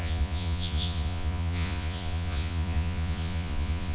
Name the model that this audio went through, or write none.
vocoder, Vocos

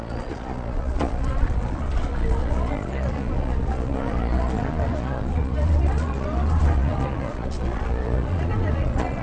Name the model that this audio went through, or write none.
vocoder, Vocos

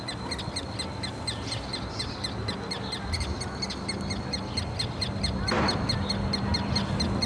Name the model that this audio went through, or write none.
none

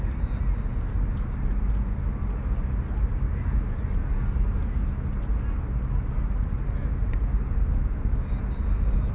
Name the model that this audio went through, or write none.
none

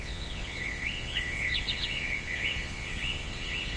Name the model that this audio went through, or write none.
vocoder, Vocos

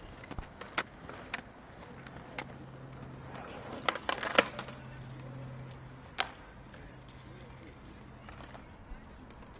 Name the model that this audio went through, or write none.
none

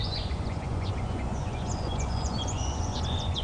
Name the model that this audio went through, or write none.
vocoder, Vocos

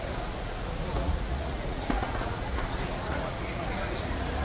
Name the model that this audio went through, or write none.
vocoder, Vocos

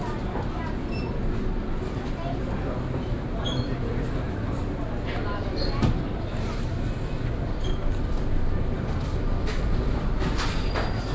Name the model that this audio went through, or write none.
none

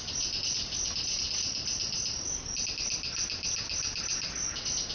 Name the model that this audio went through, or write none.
none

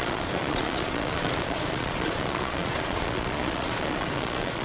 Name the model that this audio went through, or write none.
vocoder, Vocos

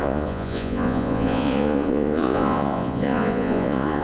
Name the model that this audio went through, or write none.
vocoder, Vocos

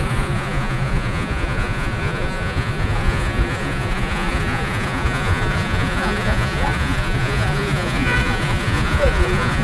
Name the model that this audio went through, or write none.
vocoder, Vocos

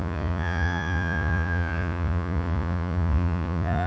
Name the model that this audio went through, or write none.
vocoder, Vocos